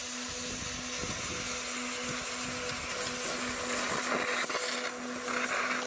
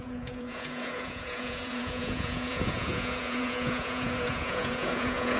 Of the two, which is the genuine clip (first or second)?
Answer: first